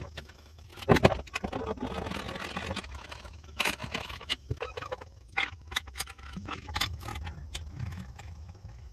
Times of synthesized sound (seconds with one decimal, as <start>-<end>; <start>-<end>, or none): 0.0-0.7; 2.8-7.1; 7.7-8.9